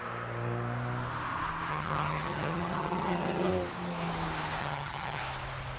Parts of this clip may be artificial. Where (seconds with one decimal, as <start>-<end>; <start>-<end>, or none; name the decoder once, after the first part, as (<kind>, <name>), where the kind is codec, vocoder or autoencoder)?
1.7-3.5 (vocoder, HiFi-GAN); 4.6-5.2